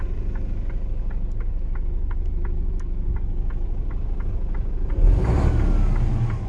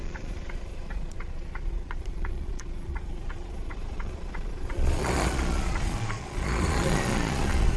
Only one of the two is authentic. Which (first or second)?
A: first